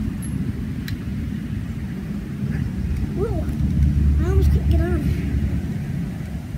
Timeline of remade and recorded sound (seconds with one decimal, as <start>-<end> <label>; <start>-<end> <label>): 0.0-6.6 recorded